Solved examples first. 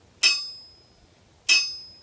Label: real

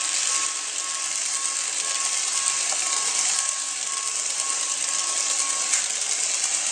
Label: real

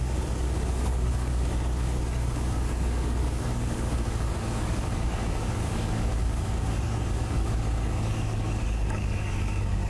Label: fake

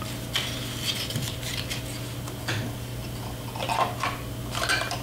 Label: real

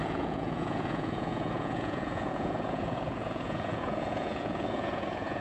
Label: fake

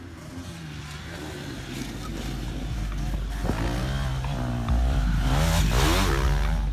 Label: real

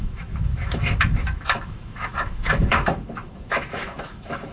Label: fake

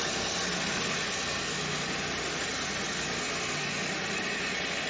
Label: real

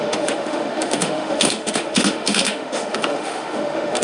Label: fake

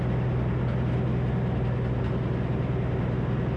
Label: real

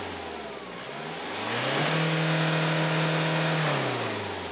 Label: real